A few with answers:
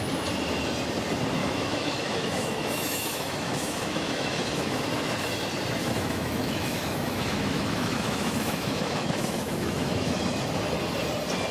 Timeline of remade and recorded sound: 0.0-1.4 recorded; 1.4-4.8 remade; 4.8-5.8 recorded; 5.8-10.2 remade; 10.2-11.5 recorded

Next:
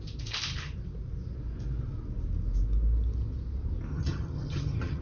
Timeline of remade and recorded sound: 0.0-3.9 recorded; 3.9-5.0 remade

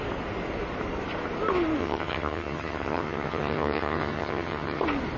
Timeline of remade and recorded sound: 0.0-1.8 recorded; 1.8-4.8 remade; 4.8-5.2 recorded

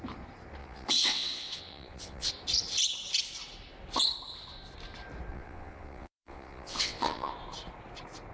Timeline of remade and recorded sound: 0.0-0.6 recorded; 0.6-2.3 remade; 2.3-5.3 recorded; 5.3-7.3 remade; 7.3-8.3 recorded

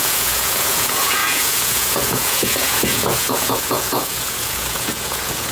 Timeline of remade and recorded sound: 0.0-5.5 remade

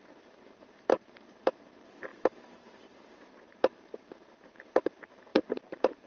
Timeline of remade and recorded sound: 0.0-6.1 remade

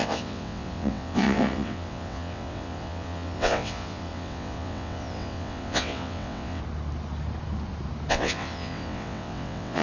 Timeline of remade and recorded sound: 0.0-6.6 remade; 6.6-8.1 recorded; 8.1-9.8 remade